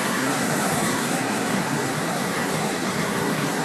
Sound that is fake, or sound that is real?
fake